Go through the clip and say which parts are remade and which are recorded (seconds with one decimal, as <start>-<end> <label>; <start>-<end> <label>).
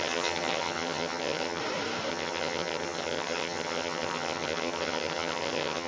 0.0-1.6 remade; 1.6-2.1 recorded; 2.1-5.9 remade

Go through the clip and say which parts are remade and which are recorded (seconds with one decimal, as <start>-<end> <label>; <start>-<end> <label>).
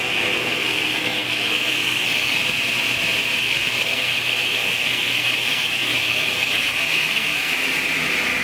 0.0-2.4 remade; 2.4-3.4 recorded; 3.4-7.5 remade; 7.5-8.4 recorded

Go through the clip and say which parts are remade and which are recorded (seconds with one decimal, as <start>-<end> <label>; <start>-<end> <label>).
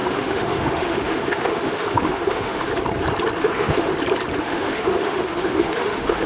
0.0-2.7 remade; 2.7-3.4 recorded; 3.4-3.9 remade; 3.9-4.4 recorded; 4.4-6.3 remade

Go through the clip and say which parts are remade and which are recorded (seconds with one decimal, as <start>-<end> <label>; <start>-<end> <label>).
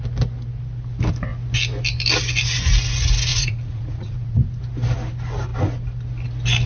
0.0-3.3 recorded; 3.3-4.6 remade; 4.6-6.7 recorded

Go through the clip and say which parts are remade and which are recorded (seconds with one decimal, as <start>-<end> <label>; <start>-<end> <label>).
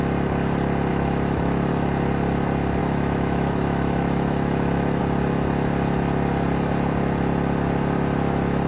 0.0-0.9 recorded; 0.9-1.7 remade; 1.7-2.8 recorded; 2.8-5.0 remade; 5.0-8.7 recorded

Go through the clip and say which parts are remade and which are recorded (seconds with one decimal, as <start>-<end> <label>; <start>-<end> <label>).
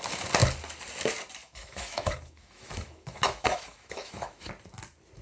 0.0-1.4 recorded; 1.4-4.5 remade; 4.5-5.2 recorded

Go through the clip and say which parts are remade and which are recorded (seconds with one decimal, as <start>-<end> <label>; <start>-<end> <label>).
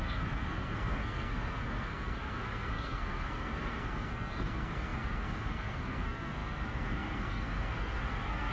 0.0-8.5 remade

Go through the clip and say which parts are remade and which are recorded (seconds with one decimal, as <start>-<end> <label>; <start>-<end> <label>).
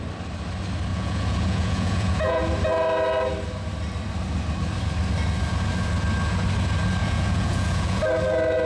0.0-0.9 recorded; 0.9-2.4 remade; 2.4-7.0 recorded; 7.0-8.0 remade; 8.0-8.7 recorded